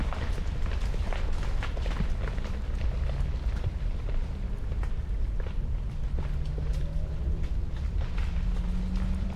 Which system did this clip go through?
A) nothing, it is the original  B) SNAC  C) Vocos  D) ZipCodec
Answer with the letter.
A